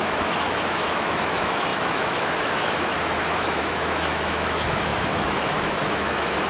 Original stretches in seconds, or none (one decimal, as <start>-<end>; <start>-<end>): none